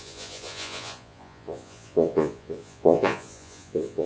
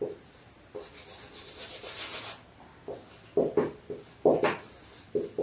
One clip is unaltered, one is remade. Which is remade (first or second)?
first